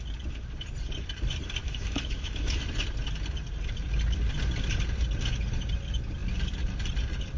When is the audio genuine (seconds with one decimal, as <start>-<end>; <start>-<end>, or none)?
0.0-1.6; 2.6-7.4